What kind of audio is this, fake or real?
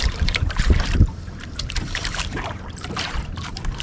fake